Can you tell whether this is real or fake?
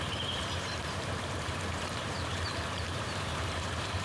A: fake